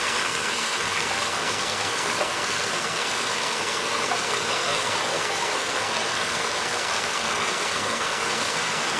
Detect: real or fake fake